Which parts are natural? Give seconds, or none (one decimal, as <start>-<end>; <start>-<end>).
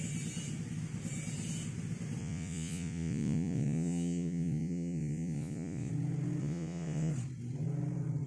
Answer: 0.0-2.2; 5.9-6.4; 7.1-8.3